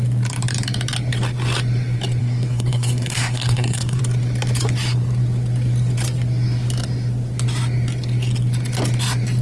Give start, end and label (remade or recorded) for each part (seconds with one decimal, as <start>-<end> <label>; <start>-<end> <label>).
0.0-2.2 recorded; 2.2-4.0 remade; 4.0-9.4 recorded